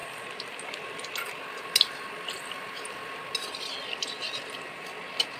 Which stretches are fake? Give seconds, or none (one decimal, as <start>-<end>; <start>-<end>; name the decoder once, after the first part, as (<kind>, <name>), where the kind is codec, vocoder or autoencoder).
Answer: none

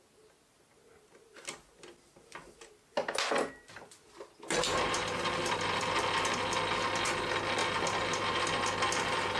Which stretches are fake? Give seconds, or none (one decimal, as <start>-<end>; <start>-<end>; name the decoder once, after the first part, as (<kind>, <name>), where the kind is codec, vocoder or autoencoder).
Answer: none